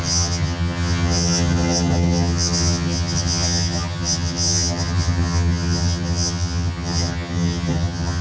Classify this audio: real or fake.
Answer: fake